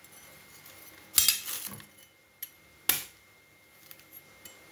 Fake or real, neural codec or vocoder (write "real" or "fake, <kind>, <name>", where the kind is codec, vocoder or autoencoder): real